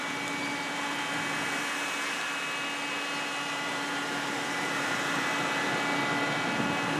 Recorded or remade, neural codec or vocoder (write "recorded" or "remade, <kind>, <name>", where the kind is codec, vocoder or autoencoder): recorded